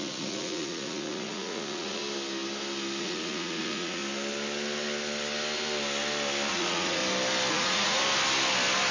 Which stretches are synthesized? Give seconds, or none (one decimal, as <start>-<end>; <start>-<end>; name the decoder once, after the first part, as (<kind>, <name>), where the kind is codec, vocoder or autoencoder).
0.0-2.0 (vocoder, Vocos); 3.0-4.0; 6.5-7.0; 7.5-8.0